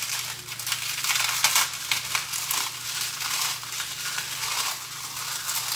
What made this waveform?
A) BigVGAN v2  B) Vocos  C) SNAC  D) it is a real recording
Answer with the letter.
D